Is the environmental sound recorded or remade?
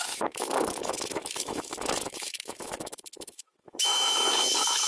remade